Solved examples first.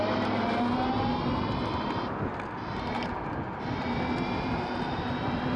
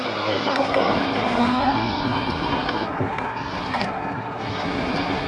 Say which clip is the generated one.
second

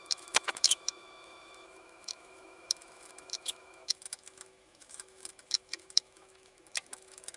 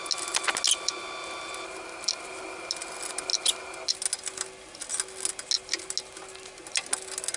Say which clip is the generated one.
first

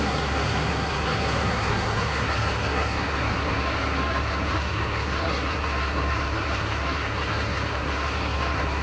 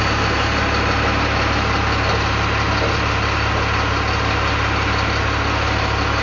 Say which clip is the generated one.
first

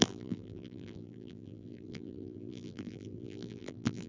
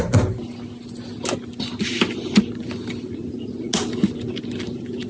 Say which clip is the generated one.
first